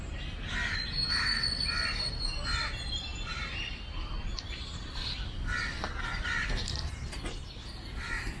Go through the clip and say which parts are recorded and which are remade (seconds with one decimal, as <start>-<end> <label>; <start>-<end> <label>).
0.0-8.4 recorded